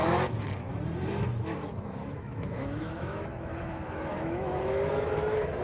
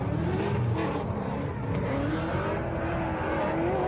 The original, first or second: second